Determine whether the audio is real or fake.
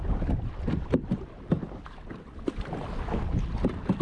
real